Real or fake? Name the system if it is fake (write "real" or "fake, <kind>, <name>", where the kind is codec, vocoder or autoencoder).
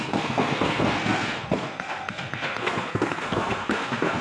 fake, codec, SNAC